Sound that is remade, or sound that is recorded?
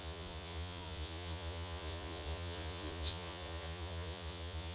remade